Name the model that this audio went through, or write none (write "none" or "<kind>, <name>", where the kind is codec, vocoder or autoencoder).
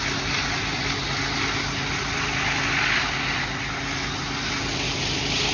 none